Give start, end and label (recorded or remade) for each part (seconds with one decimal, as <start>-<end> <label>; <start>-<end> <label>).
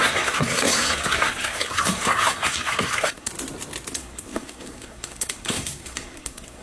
0.0-3.3 remade; 3.3-3.9 recorded; 3.9-6.6 remade